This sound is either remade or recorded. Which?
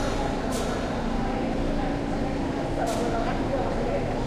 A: recorded